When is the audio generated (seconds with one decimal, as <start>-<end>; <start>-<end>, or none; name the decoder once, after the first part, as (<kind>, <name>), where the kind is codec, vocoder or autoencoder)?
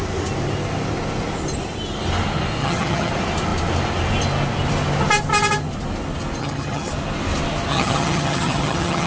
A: 2.6-3.1 (vocoder, HiFi-GAN); 6.4-6.9; 7.7-9.1